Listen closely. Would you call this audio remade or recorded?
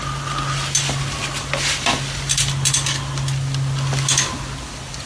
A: recorded